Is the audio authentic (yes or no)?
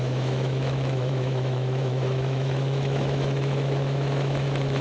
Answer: no